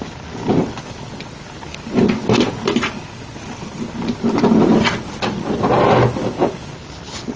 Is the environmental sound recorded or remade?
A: recorded